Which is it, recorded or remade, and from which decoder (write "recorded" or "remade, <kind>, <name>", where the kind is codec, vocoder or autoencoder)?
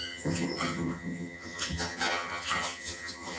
remade, vocoder, HiFi-GAN